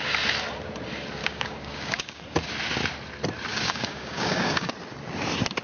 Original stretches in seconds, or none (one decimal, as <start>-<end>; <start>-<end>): 0.0-1.2; 2.2-3.5; 4.7-5.6